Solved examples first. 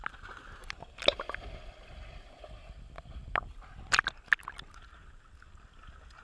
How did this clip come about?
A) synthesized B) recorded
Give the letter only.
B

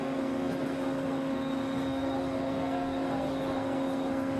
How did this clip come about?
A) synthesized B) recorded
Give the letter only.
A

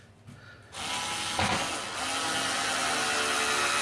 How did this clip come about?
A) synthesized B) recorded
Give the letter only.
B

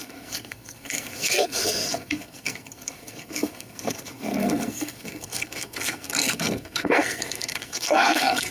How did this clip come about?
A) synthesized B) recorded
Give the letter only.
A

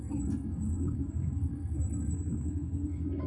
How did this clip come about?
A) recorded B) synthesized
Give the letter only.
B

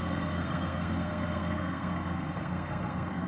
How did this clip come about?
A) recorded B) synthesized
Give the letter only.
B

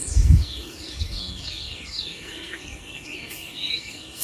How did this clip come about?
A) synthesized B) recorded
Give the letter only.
A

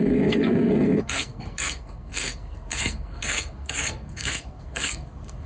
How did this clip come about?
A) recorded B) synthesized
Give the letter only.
B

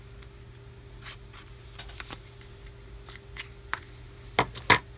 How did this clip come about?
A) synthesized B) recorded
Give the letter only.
B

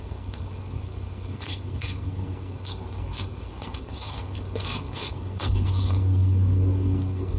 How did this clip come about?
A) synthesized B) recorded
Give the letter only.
A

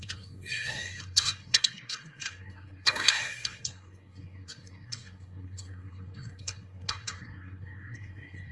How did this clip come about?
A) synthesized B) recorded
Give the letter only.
A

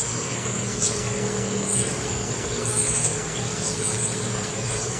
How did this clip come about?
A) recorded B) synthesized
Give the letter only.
B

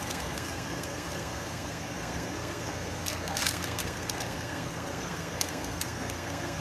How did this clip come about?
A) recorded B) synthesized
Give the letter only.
B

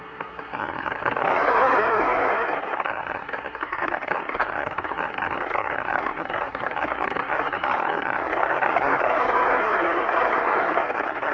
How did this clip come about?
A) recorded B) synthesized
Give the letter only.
B